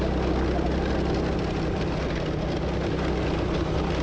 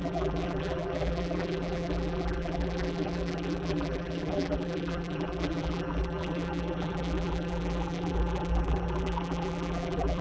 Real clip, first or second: first